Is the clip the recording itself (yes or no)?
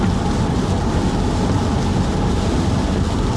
yes